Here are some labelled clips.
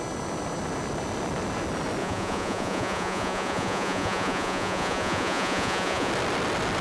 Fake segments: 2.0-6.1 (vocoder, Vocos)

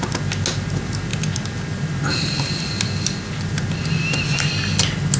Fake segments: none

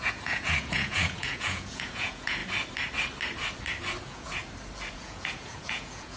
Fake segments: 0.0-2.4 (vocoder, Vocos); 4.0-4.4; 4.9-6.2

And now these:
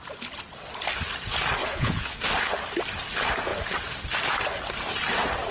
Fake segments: 1.6-2.2 (vocoder, Vocos)

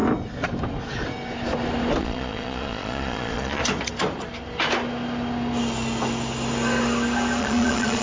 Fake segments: 2.0-3.6 (vocoder, Vocos); 7.4-8.0

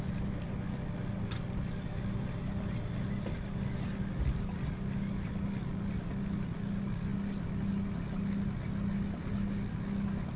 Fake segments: none

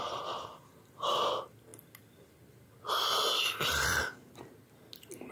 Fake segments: none

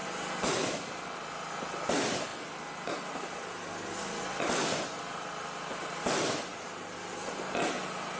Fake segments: none